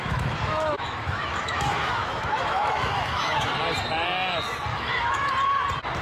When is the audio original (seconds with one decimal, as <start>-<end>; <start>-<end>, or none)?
3.5-4.7; 5.3-6.0